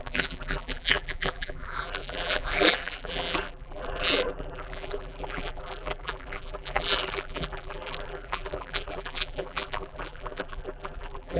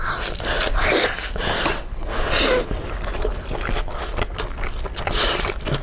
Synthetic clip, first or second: first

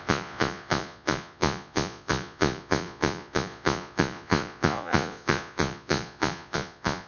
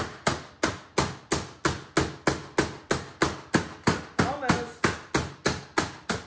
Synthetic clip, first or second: first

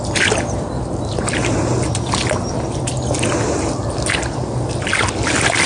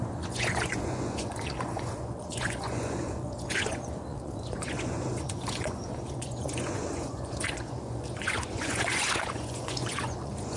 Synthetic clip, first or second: second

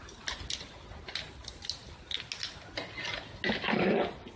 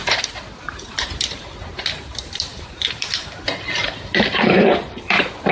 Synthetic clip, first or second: second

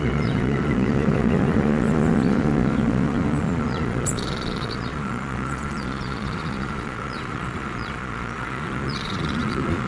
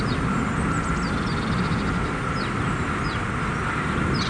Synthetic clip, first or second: first